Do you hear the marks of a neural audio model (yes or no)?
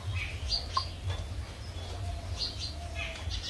no